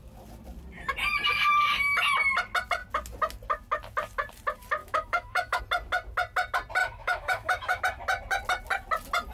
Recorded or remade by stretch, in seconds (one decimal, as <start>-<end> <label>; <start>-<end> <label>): 0.0-4.8 recorded; 4.8-5.6 remade; 5.6-6.8 recorded; 6.8-7.8 remade; 7.8-9.3 recorded